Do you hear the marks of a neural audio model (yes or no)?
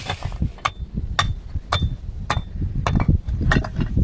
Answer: no